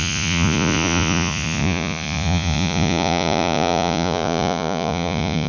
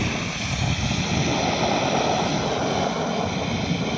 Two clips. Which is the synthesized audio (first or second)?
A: first